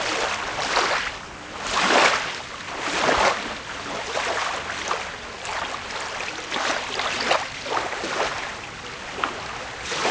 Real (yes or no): yes